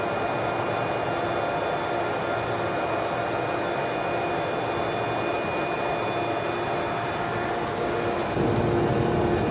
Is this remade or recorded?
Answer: recorded